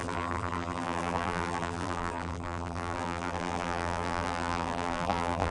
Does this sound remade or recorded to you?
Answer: remade